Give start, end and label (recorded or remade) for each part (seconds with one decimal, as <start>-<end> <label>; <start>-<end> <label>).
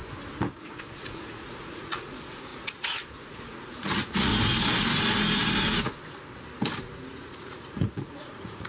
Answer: 0.0-0.5 recorded; 0.5-4.3 remade; 4.3-7.1 recorded; 7.1-8.7 remade